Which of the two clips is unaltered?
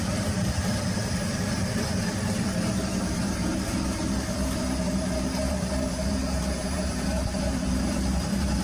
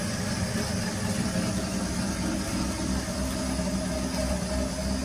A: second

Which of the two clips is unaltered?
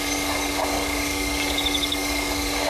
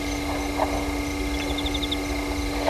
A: second